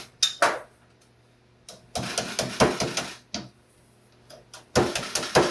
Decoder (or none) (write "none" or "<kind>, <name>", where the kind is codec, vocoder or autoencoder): none